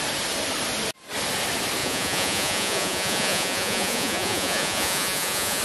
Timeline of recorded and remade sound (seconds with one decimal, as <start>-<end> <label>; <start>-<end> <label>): 0.0-1.8 recorded; 1.8-5.6 remade